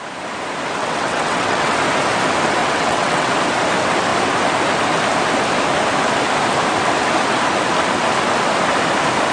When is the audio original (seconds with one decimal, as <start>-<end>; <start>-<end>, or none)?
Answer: 0.0-0.8; 1.8-2.6; 3.3-9.3